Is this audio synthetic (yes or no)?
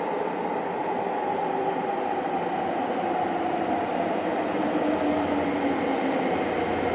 no